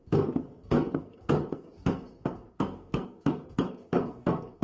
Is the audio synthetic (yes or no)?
yes